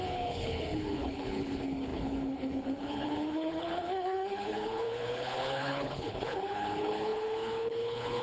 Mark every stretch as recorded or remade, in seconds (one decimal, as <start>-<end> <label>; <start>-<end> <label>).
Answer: 0.0-8.2 remade